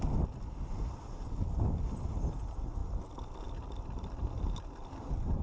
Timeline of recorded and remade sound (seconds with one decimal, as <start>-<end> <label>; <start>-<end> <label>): 0.0-5.4 recorded